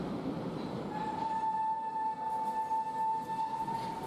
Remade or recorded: recorded